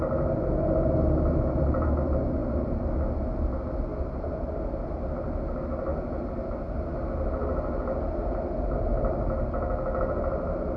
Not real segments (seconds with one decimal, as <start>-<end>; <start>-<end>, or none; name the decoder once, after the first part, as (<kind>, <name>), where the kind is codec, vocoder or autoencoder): none